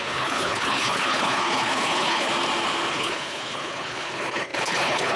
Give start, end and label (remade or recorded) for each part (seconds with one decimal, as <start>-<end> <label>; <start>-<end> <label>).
0.0-2.3 remade; 2.3-2.9 recorded; 2.9-5.2 remade